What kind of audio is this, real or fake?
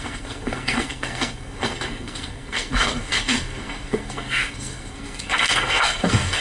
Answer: fake